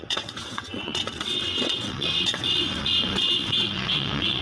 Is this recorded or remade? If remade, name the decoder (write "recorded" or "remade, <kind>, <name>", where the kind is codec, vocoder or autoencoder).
remade, vocoder, WaveNeXt